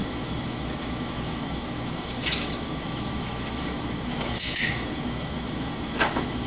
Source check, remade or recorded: remade